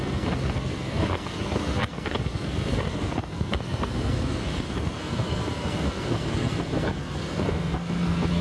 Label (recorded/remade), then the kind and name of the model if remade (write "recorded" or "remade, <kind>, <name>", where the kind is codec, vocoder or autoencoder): remade, codec, SNAC